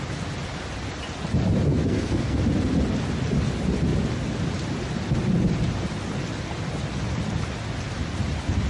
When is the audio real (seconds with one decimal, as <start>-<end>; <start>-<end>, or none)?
0.0-1.7; 2.4-8.7